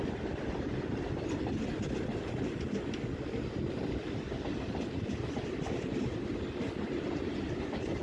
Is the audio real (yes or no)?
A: yes